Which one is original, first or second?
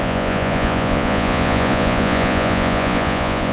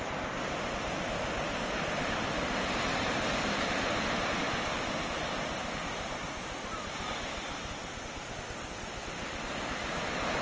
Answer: second